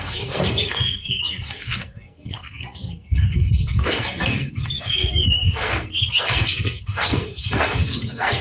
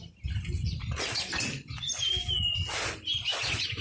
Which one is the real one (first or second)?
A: second